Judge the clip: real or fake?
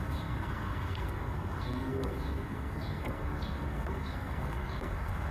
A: fake